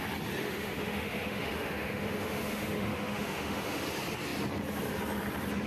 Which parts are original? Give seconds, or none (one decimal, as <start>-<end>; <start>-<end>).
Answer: 0.0-0.4; 3.8-5.7